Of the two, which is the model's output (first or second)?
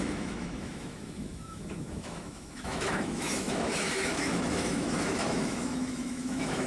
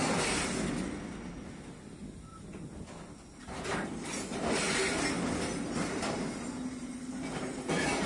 first